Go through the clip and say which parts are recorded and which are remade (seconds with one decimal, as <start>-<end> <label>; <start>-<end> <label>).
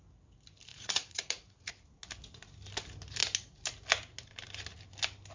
0.0-0.7 recorded; 0.7-1.7 remade; 1.7-5.3 recorded